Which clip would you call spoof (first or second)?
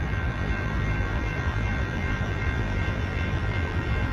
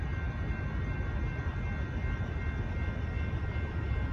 first